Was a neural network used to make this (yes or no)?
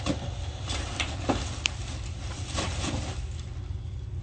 no